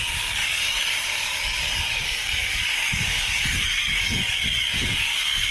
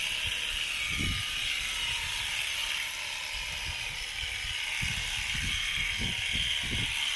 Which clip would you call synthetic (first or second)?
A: first